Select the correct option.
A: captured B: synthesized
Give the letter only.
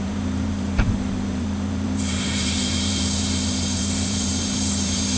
B